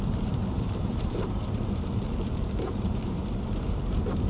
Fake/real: fake